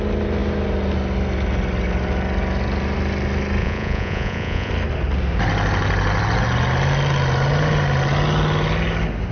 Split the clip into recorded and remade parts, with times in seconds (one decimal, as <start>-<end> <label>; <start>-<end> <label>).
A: 0.0-3.6 recorded; 3.6-4.7 remade; 4.7-9.3 recorded